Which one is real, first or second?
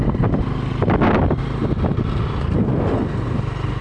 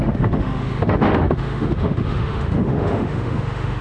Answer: first